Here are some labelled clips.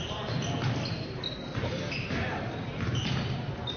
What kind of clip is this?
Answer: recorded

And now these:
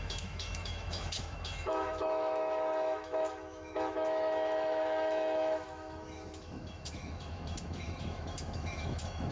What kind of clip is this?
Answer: remade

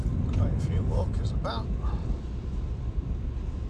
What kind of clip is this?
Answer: remade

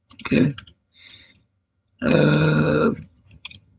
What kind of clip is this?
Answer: remade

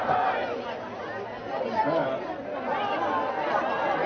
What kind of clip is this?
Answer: recorded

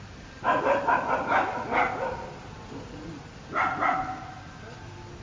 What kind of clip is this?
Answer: recorded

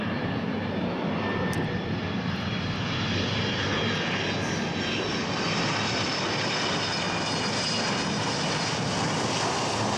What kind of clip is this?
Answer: recorded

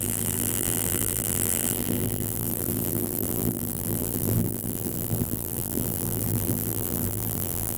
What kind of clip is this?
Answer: remade